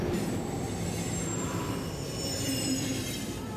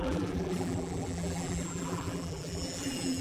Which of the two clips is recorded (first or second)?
first